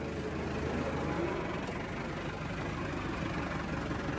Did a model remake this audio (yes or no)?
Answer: no